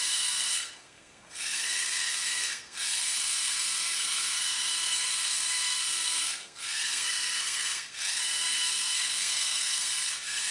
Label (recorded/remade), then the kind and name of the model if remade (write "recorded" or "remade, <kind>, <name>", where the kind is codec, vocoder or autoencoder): remade, codec, SNAC